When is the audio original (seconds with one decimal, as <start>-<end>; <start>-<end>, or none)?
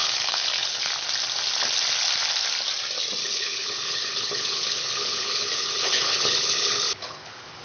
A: 0.9-3.2